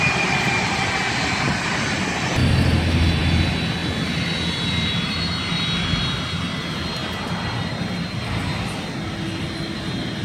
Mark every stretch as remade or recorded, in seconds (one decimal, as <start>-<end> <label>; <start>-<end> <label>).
0.0-10.2 recorded